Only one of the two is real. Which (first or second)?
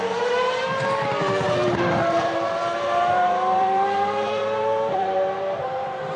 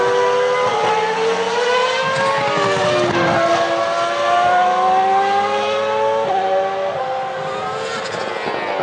second